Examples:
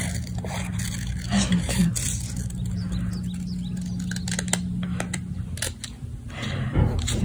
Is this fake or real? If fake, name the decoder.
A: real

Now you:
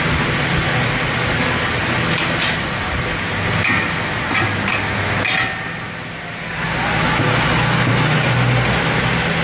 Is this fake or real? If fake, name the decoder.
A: real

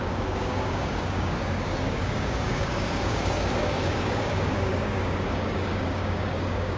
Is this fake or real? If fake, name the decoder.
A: fake, codec, DAC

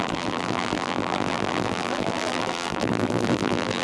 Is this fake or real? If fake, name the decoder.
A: fake, vocoder, BigVGAN v2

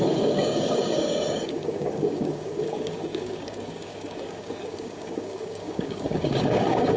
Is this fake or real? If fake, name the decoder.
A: fake, codec, DAC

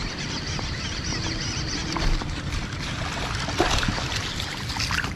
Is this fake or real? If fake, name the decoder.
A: real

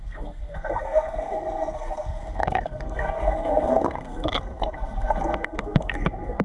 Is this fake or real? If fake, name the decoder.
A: fake, codec, SNAC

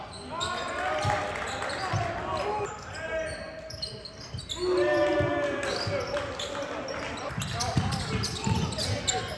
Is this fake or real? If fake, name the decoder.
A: real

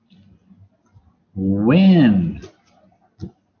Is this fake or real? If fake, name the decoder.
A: real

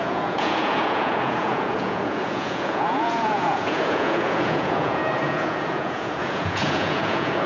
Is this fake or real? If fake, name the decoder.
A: fake, vocoder, Vocos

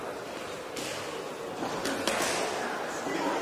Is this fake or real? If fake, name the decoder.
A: real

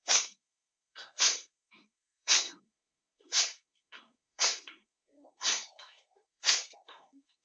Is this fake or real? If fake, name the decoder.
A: fake, codec, SNAC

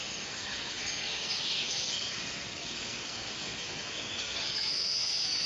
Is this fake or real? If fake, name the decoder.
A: fake, codec, SNAC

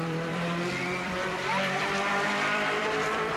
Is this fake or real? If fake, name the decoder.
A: fake, vocoder, BigVGAN v2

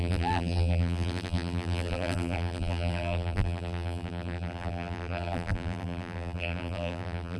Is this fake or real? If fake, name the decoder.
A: fake, vocoder, BigVGAN v2